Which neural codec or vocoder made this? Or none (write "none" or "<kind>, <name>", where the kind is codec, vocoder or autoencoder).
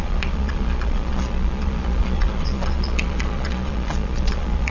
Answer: vocoder, Vocos